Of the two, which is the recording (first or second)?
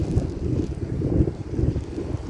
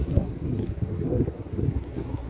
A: first